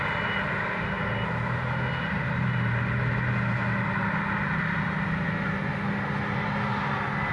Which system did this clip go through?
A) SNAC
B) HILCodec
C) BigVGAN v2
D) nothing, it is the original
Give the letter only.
D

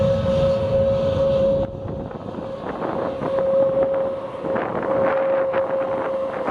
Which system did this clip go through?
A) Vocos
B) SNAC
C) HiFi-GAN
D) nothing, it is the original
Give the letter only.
D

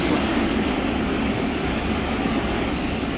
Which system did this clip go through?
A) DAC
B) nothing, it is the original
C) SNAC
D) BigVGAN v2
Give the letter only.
A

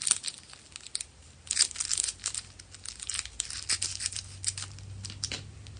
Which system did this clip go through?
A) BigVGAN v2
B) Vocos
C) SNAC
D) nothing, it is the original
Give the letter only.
D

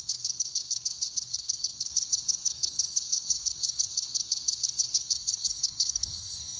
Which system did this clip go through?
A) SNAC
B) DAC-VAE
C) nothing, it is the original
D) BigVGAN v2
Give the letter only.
A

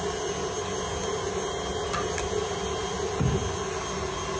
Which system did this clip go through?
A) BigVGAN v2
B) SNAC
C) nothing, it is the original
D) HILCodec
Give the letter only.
C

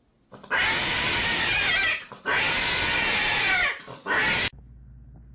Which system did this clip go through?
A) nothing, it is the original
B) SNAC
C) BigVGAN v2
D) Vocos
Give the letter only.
A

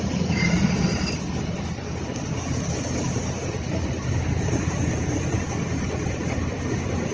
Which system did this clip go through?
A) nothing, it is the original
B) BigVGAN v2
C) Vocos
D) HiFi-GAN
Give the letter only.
A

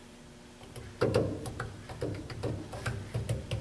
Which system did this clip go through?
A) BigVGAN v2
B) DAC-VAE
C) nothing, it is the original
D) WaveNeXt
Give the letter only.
C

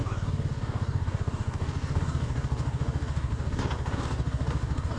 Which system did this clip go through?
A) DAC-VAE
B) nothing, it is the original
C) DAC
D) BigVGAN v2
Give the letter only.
C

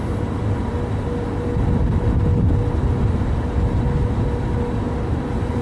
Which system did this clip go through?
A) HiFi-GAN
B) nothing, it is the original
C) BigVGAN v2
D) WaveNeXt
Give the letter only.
B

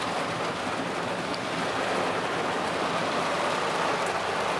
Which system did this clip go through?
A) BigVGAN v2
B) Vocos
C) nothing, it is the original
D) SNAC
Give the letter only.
C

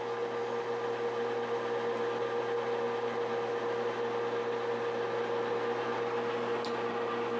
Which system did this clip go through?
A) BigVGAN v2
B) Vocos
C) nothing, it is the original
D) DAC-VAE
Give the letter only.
C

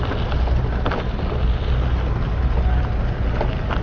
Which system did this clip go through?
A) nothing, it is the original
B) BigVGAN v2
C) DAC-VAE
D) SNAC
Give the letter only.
A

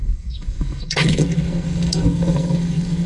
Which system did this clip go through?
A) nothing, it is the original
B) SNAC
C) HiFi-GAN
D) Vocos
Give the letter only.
B